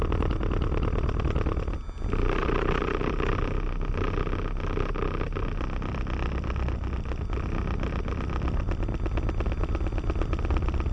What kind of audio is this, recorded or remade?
recorded